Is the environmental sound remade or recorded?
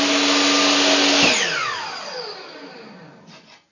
recorded